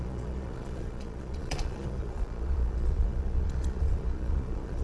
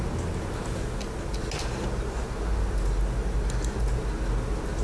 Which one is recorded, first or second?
second